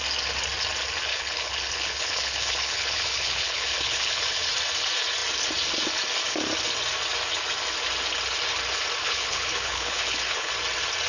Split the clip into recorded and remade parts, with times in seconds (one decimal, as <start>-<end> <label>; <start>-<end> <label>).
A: 0.0-1.1 recorded; 1.1-4.5 remade; 4.5-9.0 recorded; 9.0-10.5 remade; 10.5-11.1 recorded